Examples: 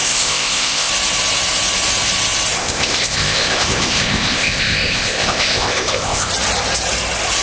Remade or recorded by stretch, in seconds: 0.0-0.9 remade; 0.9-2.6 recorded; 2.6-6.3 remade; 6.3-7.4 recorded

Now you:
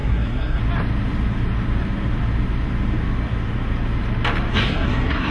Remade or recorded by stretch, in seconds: 0.0-0.6 remade; 0.6-4.5 recorded; 4.5-5.3 remade

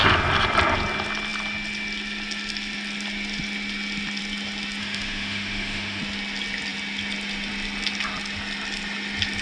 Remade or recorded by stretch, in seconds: 0.0-4.8 recorded; 4.8-6.0 remade; 6.0-9.4 recorded

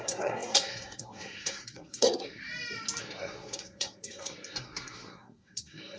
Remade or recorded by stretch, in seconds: 0.0-2.4 remade; 2.4-3.0 recorded; 3.0-6.0 remade

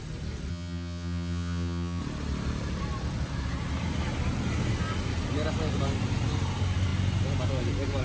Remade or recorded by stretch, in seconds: 0.0-0.5 recorded; 0.5-2.0 remade; 2.0-8.0 recorded

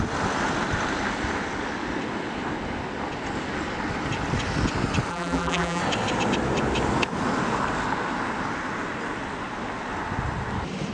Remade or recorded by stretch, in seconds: 0.0-5.1 recorded; 5.1-5.8 remade; 5.8-10.9 recorded

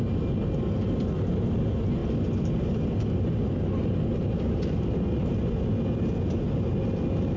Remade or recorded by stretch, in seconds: 0.0-7.4 recorded

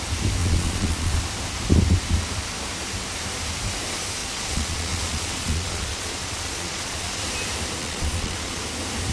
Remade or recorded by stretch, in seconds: 0.0-0.4 recorded; 0.4-1.2 remade; 1.2-4.2 recorded; 4.2-7.2 remade; 7.2-7.8 recorded; 7.8-8.6 remade; 8.6-9.1 recorded